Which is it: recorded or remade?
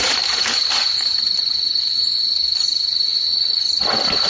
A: remade